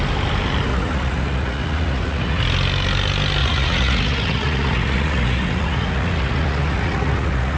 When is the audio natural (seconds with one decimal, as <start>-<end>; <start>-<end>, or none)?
0.0-0.7; 2.4-3.4